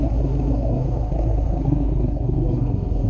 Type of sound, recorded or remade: remade